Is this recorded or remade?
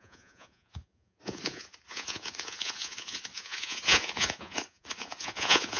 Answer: remade